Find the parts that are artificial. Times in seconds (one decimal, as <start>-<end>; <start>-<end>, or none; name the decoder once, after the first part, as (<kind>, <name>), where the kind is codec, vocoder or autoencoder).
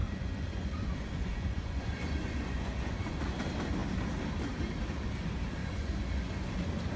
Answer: 0.0-3.4 (vocoder, Vocos); 5.6-6.5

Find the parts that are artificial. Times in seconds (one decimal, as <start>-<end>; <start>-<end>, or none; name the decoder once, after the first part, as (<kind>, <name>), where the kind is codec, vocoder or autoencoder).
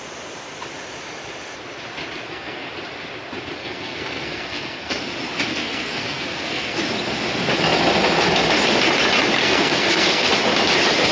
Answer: 2.2-2.7 (codec, SNAC); 3.6-5.0; 5.5-6.8; 9.4-10.3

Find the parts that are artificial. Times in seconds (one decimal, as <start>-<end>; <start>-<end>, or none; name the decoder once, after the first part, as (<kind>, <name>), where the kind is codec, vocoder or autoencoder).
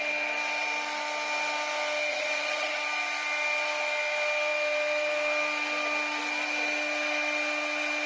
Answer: 2.1-2.8 (vocoder, HiFi-GAN)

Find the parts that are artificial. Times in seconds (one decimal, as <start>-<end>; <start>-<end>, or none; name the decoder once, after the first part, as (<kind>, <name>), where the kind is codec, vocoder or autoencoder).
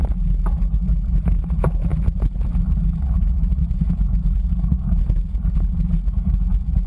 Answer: none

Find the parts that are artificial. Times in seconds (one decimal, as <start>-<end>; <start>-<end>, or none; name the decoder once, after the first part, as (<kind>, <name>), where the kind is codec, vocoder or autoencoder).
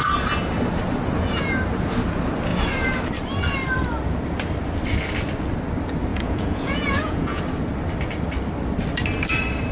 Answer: 6.1-7.4 (vocoder, Vocos)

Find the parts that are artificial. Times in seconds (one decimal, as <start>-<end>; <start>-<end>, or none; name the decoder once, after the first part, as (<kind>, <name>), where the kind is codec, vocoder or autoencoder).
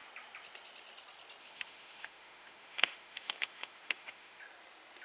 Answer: 1.4-4.4 (autoencoder, DAC-VAE)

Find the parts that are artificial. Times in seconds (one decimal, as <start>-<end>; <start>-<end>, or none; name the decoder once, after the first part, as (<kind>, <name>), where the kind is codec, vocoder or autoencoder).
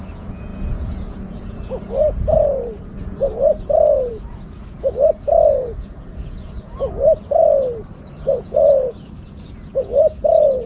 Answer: 0.0-7.4 (vocoder, Vocos); 8.0-10.7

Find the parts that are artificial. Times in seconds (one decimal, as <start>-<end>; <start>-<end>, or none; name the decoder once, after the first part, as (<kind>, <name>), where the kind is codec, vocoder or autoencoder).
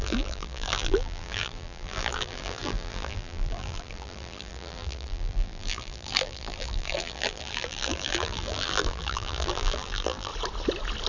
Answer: 0.0-10.3 (vocoder, BigVGAN v2)